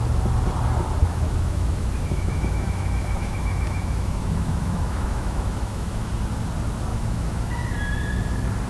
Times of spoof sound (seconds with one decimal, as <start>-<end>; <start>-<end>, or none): 1.0-6.1; 6.9-7.5